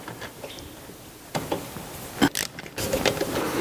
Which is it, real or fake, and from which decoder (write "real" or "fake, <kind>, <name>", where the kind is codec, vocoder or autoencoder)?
real